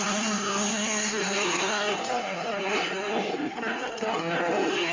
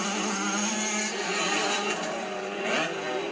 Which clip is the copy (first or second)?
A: first